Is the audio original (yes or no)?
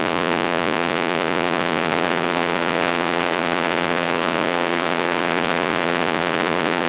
no